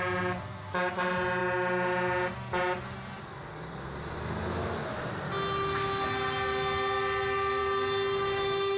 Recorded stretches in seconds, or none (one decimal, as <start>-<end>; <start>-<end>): 0.0-8.8